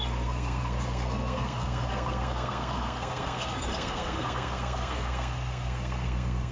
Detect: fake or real fake